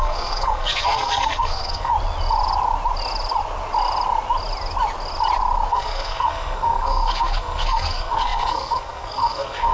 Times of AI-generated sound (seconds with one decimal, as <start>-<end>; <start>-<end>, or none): 0.0-1.9; 5.7-9.7